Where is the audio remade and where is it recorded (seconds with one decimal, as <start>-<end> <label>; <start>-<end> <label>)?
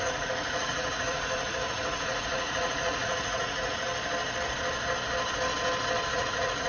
0.0-3.9 remade; 3.9-6.1 recorded; 6.1-6.7 remade